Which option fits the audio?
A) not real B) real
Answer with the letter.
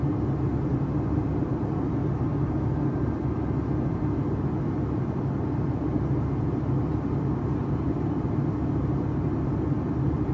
B